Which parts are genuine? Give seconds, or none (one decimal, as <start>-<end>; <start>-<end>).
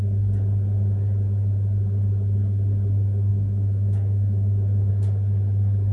0.0-3.3; 4.9-5.9